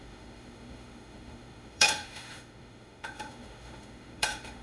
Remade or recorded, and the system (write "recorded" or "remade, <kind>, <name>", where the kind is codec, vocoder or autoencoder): remade, autoencoder, DAC-VAE